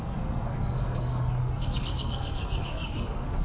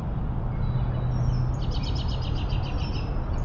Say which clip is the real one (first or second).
second